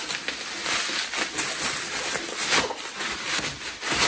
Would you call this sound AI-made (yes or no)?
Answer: no